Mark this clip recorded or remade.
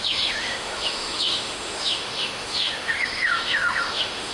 remade